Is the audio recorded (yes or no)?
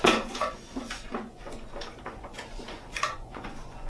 no